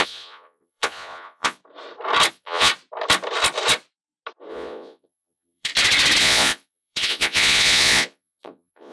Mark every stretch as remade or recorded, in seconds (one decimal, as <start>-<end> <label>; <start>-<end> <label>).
0.0-1.6 remade; 1.6-2.3 recorded; 2.3-2.7 remade; 2.7-4.5 recorded; 4.5-5.7 remade; 5.7-6.2 recorded; 6.2-8.9 remade